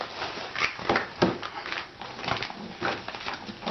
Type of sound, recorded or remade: recorded